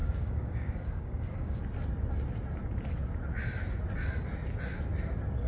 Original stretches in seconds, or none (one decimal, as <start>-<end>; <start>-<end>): 1.6-5.5